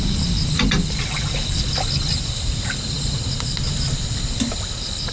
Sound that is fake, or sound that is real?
real